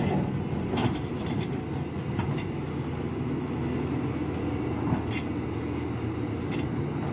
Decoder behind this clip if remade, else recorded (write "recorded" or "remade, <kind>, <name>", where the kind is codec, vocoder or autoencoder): recorded